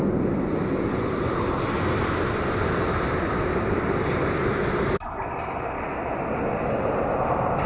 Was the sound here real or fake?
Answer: real